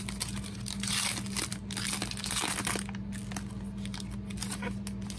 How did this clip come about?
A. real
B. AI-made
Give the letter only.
A